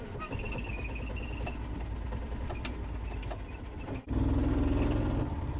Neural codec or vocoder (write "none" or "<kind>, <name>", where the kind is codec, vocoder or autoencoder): none